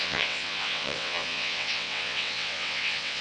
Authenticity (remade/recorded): remade